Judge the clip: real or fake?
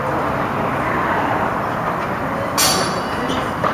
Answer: real